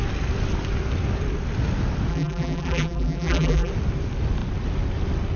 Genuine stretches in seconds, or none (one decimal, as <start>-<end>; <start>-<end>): 0.0-2.1; 3.7-5.4